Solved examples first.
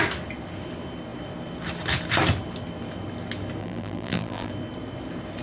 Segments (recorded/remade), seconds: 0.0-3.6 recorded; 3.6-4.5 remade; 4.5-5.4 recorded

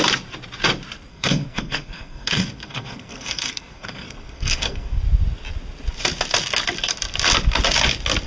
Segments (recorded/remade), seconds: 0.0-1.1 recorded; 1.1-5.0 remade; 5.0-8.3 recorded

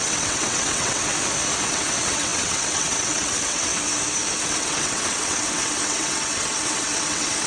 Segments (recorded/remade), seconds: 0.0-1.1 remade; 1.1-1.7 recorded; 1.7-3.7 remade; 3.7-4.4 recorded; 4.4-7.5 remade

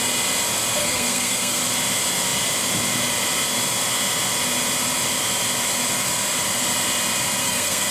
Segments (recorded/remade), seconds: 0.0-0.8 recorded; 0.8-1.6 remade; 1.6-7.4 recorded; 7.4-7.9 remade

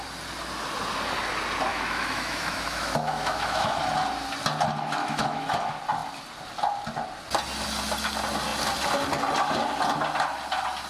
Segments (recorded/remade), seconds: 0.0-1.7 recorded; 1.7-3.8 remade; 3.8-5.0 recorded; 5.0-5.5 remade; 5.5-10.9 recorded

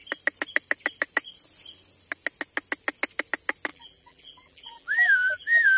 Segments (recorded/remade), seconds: 0.0-3.7 recorded; 3.7-5.8 remade